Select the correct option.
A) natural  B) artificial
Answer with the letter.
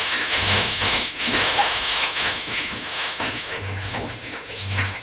B